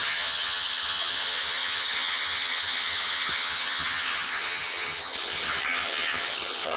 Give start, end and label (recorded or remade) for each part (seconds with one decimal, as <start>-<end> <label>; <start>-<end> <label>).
0.0-6.8 remade

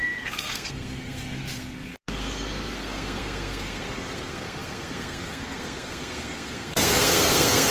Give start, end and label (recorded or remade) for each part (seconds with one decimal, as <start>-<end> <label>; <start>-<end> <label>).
0.0-7.7 remade

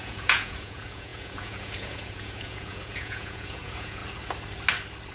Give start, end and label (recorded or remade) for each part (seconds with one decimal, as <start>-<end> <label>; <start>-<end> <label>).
0.0-4.0 remade; 4.0-5.1 recorded

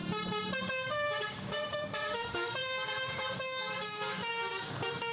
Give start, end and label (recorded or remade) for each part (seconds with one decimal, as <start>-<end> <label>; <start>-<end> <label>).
0.0-0.6 recorded; 0.6-5.1 remade

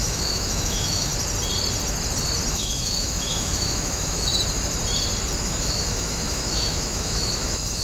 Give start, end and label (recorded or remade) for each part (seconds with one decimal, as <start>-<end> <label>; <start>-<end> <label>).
0.0-1.1 remade; 1.1-2.5 recorded; 2.5-4.3 remade; 4.3-5.4 recorded; 5.4-7.8 remade

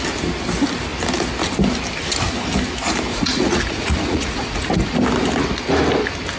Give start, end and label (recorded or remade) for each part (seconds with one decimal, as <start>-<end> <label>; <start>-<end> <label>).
0.0-3.1 recorded; 3.1-4.7 remade; 4.7-6.4 recorded